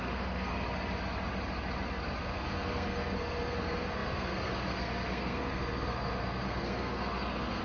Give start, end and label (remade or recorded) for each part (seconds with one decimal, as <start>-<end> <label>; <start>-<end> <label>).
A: 0.0-0.5 remade; 0.5-2.2 recorded; 2.2-7.6 remade